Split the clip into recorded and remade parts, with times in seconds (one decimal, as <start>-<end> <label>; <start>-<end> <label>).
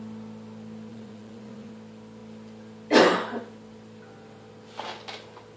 0.0-0.9 recorded; 0.9-1.7 remade; 1.7-5.6 recorded